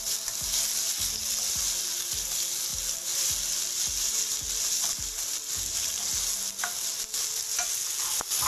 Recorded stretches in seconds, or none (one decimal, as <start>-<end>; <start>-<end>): 0.0-8.5